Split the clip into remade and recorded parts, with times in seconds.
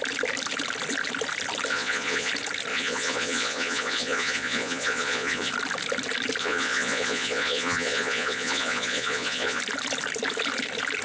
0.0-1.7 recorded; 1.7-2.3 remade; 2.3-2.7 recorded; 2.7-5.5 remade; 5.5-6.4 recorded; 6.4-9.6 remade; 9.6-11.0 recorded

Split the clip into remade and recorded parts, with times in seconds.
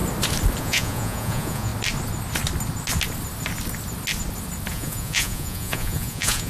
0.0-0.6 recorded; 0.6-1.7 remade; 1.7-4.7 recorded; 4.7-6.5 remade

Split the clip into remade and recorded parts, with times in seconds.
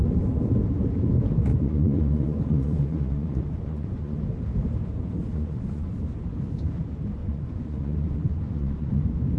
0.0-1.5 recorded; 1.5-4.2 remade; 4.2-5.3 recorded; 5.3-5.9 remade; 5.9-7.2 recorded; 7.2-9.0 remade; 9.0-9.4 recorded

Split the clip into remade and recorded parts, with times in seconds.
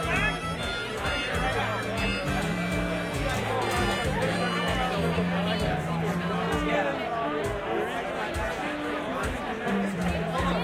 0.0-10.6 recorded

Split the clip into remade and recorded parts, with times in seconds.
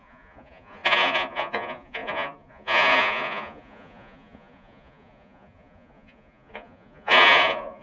0.0-7.8 remade